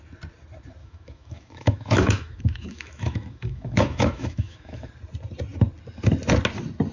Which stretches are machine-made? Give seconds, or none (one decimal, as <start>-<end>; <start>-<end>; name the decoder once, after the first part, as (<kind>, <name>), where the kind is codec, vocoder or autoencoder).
0.8-4.9 (autoencoder, DAC-VAE)